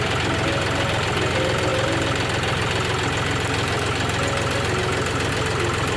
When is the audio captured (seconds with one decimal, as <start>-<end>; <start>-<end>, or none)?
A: 0.0-6.0